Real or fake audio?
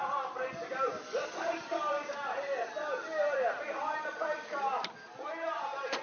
real